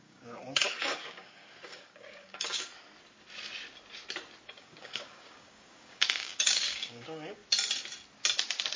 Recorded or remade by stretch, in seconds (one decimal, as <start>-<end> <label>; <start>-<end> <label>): 0.0-2.7 remade; 2.7-4.5 recorded; 4.5-7.4 remade; 7.4-8.8 recorded